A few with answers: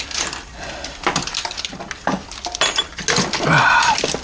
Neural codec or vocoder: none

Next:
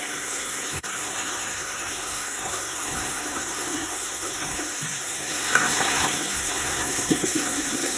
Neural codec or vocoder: codec, SNAC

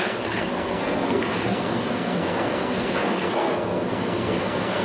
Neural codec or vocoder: codec, SNAC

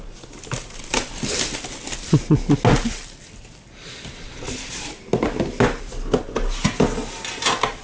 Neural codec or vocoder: none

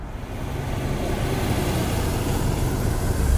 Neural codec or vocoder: none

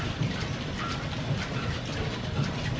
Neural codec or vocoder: none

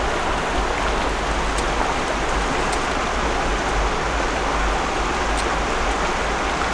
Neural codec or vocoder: none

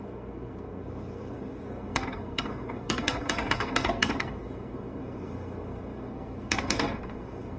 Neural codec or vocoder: codec, SNAC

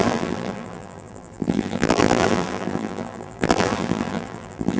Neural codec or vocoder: vocoder, BigVGAN v2